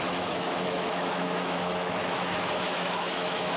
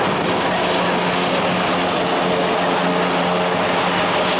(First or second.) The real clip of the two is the second